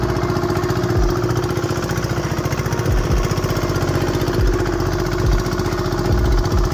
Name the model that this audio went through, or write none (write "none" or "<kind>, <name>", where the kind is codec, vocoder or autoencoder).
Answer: none